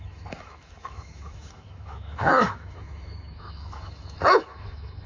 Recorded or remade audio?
remade